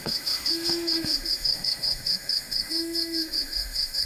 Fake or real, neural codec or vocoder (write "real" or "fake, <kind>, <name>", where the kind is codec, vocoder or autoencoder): fake, autoencoder, DAC-VAE